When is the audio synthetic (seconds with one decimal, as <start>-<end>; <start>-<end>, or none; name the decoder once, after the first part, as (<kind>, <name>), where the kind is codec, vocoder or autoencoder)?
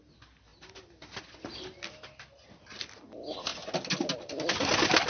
none